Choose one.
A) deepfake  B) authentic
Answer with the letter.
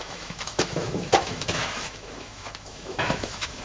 A